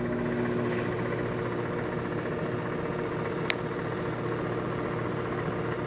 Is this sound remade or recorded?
recorded